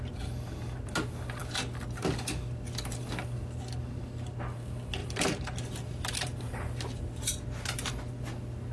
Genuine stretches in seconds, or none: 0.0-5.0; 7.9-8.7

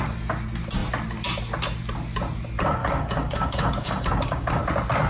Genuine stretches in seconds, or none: 0.0-2.8; 4.6-5.1

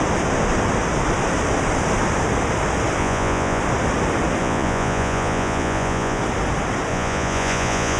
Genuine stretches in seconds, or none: 0.0-3.0; 3.6-4.4; 6.2-6.9

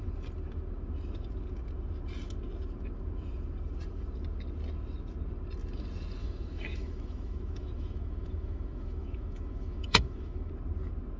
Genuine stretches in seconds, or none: 0.0-6.2; 10.5-11.2

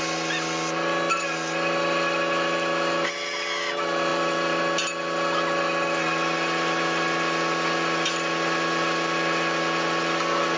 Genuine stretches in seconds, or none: 0.0-4.1; 4.6-10.6

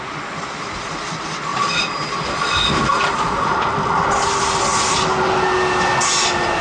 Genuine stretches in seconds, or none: 0.0-6.6

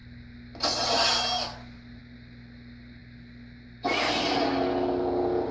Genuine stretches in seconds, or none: 0.0-5.5